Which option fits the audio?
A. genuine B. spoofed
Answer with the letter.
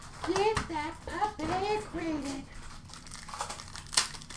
A